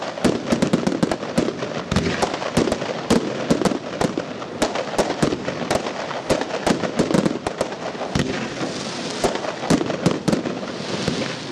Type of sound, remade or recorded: recorded